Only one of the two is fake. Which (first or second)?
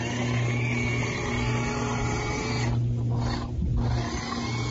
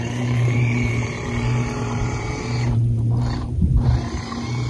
second